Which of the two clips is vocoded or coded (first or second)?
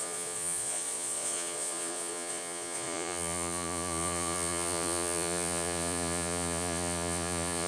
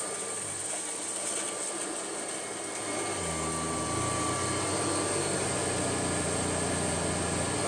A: first